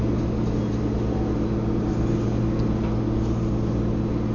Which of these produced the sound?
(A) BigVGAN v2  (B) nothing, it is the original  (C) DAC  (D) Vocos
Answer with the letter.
B